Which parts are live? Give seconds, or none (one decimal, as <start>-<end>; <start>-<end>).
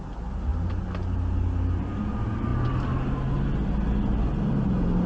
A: 0.0-5.1